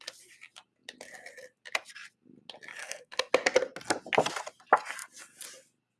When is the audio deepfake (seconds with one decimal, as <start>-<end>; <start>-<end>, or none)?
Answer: 2.8-3.3